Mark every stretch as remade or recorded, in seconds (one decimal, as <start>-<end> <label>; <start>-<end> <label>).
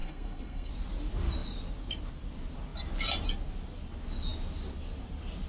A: 0.0-0.7 remade; 0.7-5.5 recorded